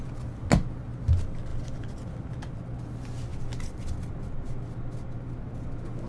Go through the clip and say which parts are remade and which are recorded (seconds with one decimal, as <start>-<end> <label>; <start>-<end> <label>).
0.0-6.1 recorded